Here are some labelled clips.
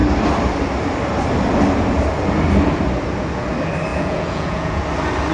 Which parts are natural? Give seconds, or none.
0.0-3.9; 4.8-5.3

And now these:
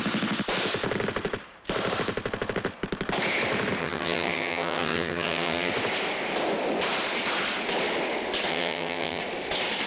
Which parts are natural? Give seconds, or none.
0.0-3.8; 5.7-8.5; 9.2-9.9

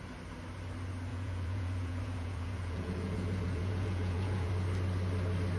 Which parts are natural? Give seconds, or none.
0.0-1.1; 4.5-5.6

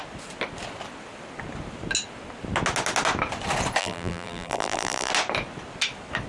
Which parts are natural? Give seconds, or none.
0.0-3.8; 5.1-6.3

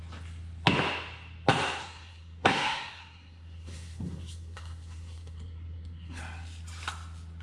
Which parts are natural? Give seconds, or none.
0.0-1.8; 6.2-7.4

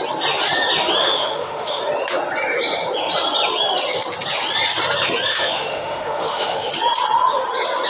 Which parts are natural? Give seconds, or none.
0.0-1.0; 1.8-5.3; 6.7-7.9

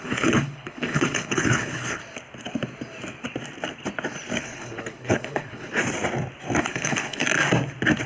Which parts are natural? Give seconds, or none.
2.0-4.4; 5.8-6.6; 7.2-8.1